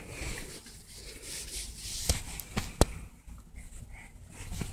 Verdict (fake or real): real